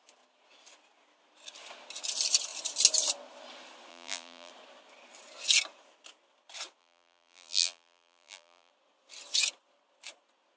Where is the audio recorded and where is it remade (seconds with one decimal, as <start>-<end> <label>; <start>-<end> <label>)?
0.0-3.9 recorded; 3.9-4.5 remade; 4.5-6.8 recorded; 6.8-8.7 remade; 8.7-10.6 recorded